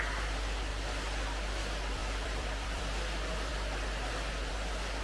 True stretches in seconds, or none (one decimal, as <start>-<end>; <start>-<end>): 0.0-2.0; 2.8-5.0